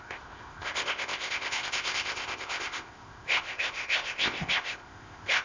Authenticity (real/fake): fake